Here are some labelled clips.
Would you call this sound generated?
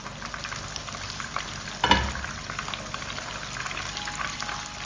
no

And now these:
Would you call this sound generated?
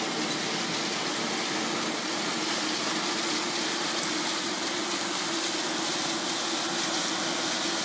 no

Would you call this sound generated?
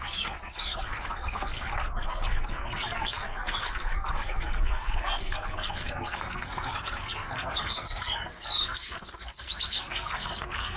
yes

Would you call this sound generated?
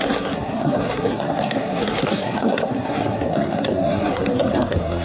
yes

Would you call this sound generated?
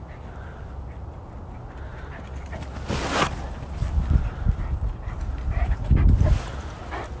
no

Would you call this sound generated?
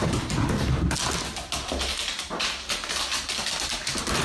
no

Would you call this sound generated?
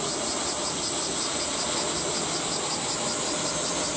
no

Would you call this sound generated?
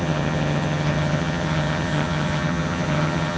yes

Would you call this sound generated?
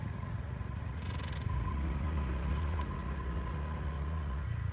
yes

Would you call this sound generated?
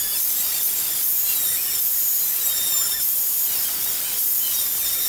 yes